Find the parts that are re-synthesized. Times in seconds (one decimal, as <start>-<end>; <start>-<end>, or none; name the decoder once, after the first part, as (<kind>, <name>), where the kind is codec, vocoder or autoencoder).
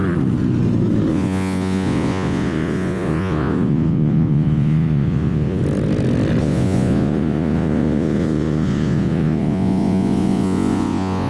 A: 1.1-5.6 (vocoder, Vocos); 6.4-11.3